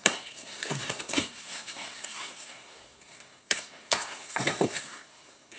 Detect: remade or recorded remade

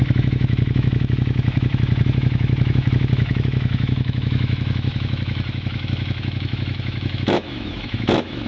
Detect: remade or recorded remade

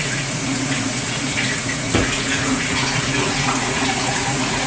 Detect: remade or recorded remade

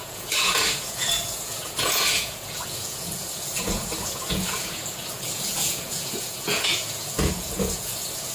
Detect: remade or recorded remade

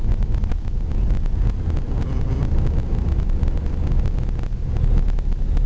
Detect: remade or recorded recorded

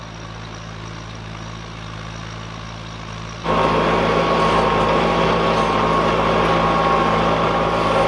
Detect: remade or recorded recorded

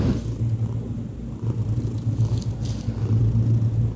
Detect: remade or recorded recorded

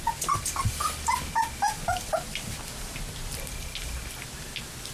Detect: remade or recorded recorded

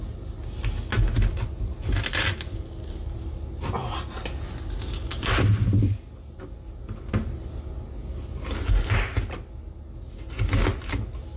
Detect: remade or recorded recorded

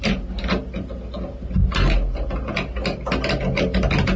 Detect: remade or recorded recorded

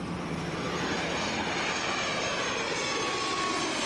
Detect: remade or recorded recorded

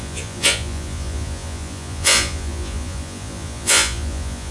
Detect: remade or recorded remade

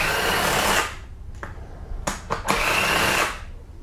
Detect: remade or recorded recorded